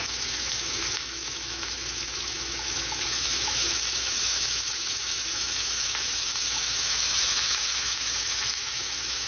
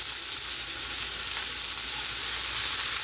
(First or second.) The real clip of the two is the second